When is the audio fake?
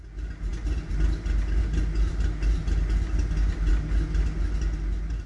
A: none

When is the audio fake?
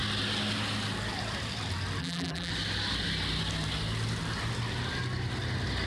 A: 2.0-2.5 (vocoder, BigVGAN v2)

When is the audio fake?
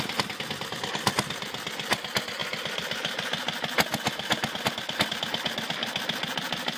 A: none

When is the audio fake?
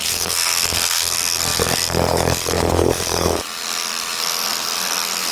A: 0.0-3.4 (codec, SNAC); 4.2-5.3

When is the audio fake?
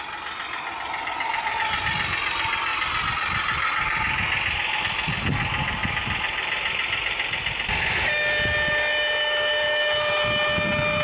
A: none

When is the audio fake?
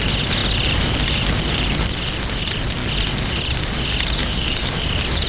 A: 4.2-4.8 (codec, DAC)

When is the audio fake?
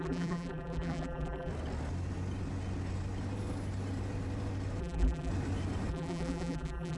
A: 0.0-1.5 (vocoder, BigVGAN v2); 4.8-5.3; 5.9-7.0